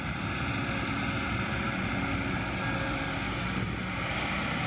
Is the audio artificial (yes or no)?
no